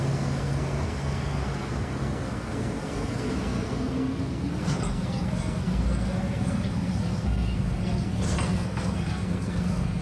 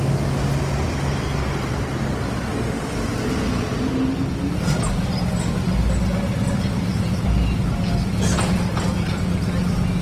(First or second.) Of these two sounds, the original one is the second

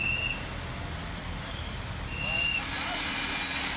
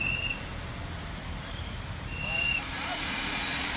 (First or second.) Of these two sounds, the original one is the first